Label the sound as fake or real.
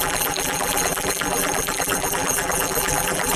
fake